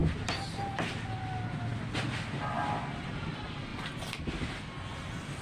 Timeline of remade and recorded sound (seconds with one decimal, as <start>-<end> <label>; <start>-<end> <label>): 0.0-5.4 recorded